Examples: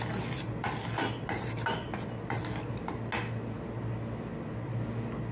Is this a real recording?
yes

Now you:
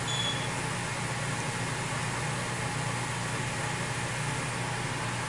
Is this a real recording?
yes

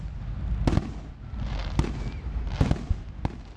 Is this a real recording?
yes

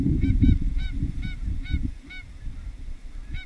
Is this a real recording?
no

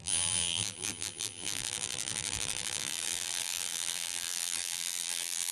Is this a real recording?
no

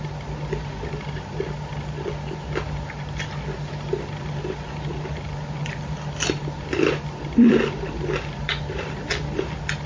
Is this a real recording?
no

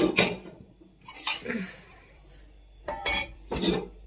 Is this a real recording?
no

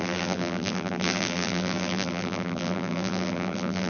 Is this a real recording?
no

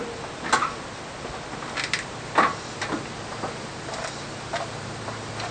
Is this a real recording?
no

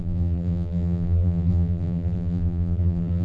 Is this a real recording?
no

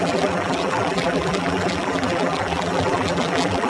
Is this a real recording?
no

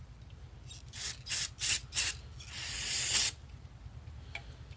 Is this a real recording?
yes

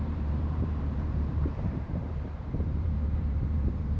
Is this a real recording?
no